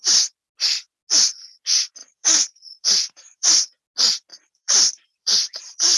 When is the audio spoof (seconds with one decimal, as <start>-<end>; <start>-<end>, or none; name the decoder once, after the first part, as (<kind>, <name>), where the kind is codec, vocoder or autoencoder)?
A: 2.0-3.8 (vocoder, BigVGAN v2); 4.3-5.6